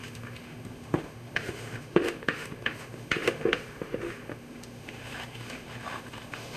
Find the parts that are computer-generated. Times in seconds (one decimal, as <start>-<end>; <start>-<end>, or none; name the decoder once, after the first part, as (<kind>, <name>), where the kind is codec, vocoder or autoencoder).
0.0-6.6 (autoencoder, DAC-VAE)